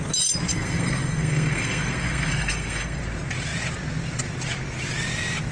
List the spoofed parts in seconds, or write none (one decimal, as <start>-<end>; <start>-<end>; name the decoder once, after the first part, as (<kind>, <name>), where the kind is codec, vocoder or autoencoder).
0.5-3.0 (codec, SNAC)